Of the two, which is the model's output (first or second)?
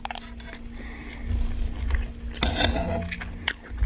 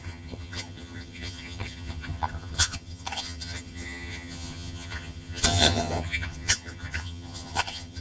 second